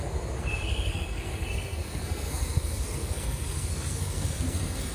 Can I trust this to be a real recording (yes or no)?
no